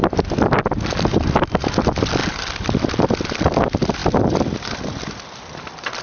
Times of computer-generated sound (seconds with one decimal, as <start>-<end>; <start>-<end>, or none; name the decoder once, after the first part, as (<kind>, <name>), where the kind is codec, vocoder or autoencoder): none